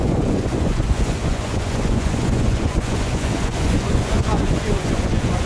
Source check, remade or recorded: remade